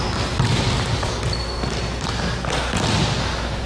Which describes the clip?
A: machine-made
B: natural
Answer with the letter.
B